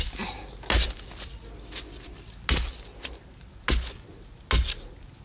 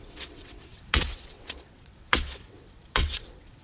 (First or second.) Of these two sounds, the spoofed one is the second